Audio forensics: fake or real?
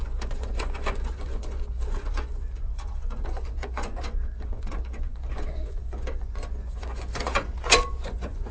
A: fake